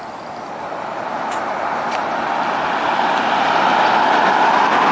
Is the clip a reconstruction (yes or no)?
no